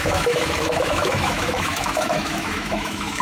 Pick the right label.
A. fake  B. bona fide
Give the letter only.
A